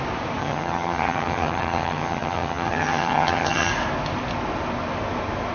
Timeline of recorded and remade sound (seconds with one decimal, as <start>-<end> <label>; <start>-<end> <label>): 0.0-0.4 recorded; 0.4-3.7 remade; 3.7-5.5 recorded